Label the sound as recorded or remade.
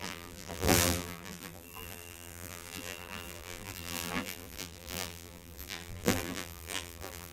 remade